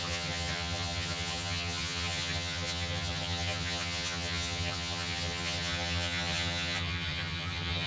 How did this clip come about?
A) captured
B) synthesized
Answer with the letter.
B